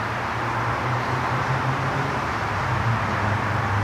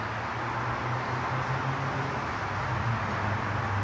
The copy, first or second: first